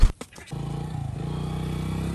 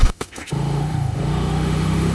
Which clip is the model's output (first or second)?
second